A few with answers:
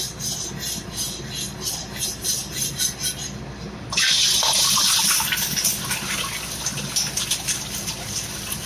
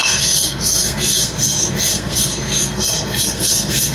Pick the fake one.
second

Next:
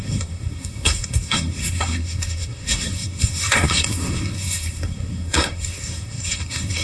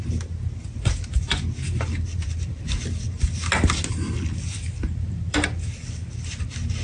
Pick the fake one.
first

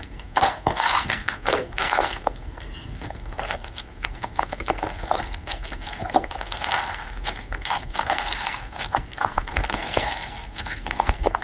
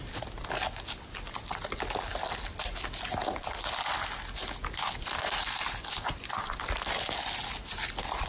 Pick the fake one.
first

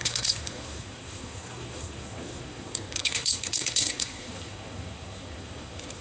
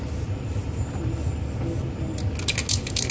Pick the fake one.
first